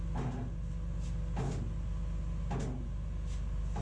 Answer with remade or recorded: recorded